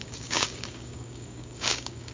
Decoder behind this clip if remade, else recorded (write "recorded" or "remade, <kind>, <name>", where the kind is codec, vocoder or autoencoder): remade, codec, DAC